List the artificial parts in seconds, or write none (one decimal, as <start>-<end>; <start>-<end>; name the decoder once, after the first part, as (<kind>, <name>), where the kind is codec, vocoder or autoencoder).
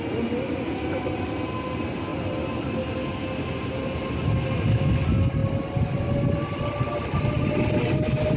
none